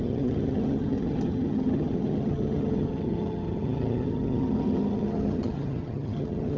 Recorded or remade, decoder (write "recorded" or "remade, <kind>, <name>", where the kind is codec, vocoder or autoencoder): remade, vocoder, HiFi-GAN